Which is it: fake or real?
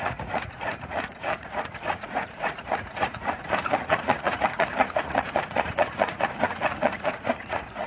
fake